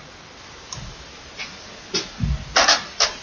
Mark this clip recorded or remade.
recorded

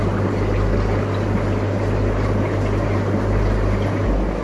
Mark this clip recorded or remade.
recorded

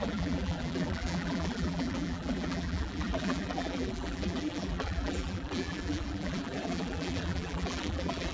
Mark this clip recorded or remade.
remade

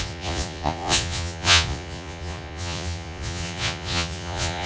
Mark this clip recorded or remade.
remade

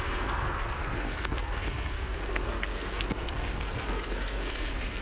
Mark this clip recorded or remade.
remade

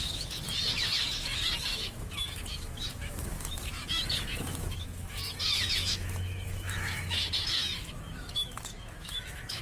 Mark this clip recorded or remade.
remade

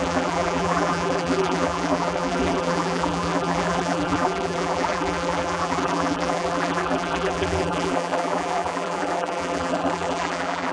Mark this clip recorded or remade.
remade